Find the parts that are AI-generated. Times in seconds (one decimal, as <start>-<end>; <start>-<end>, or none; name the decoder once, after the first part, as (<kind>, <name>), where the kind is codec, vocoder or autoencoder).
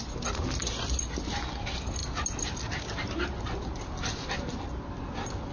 none